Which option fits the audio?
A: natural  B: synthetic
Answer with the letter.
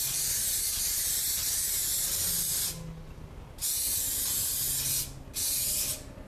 A